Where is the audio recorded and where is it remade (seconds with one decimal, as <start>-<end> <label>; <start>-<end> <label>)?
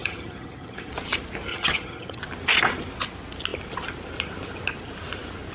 0.0-0.9 remade; 0.9-1.5 recorded; 1.5-2.2 remade; 2.2-5.5 recorded